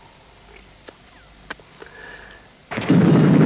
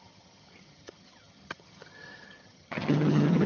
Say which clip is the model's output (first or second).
second